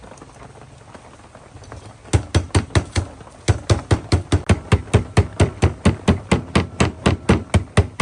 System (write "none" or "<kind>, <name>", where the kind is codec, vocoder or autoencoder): none